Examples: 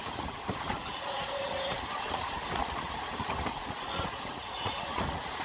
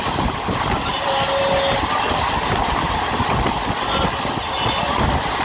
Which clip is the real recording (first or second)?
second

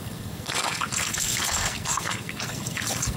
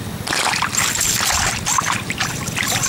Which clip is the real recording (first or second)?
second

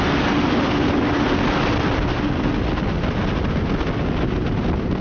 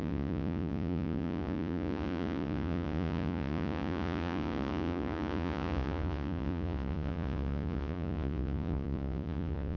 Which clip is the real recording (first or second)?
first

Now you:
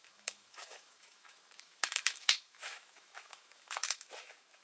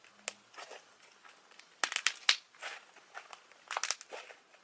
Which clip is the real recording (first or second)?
second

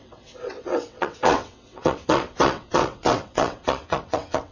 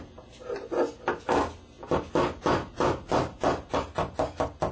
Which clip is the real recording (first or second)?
second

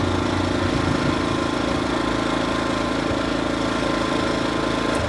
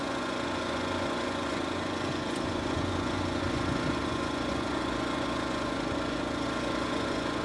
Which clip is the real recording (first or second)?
first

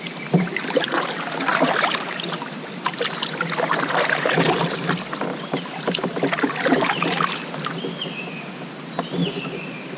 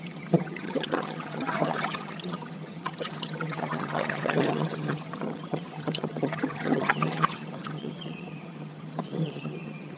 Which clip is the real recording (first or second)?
first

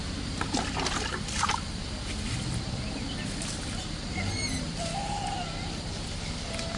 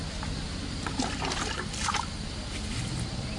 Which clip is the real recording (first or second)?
second